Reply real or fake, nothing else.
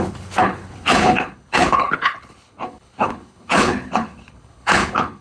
fake